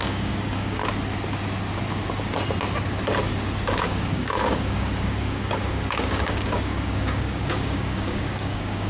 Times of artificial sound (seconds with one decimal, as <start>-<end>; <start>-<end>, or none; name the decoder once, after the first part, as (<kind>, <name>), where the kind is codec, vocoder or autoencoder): 0.0-0.8 (codec, DAC); 3.8-8.9